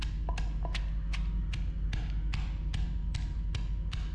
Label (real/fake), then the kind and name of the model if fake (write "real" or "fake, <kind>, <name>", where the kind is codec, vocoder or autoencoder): real